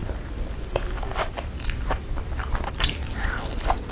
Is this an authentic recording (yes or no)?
yes